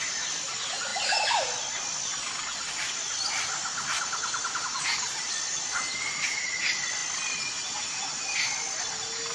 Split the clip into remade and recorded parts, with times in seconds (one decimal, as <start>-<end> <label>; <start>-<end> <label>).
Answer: 0.0-9.3 recorded